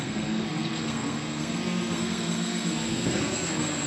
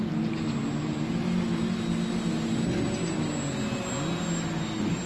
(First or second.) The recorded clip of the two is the second